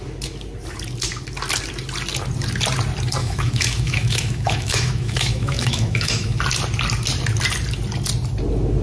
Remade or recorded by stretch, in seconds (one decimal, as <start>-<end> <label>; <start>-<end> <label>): 0.0-3.2 recorded; 3.2-6.4 remade; 6.4-8.8 recorded